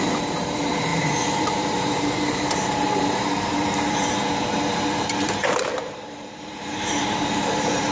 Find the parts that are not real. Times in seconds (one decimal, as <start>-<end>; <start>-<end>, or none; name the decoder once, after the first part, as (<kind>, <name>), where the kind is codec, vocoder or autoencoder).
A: 0.0-7.9 (vocoder, BigVGAN v2)